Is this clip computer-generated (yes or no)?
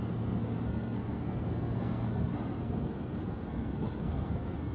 yes